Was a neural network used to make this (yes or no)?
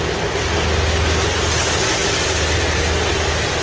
no